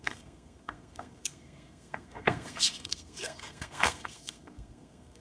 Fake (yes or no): yes